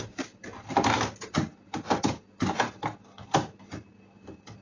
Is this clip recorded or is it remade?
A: recorded